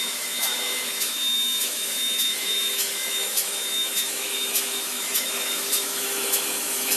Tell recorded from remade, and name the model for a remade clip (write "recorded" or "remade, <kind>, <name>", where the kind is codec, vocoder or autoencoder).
remade, autoencoder, DAC-VAE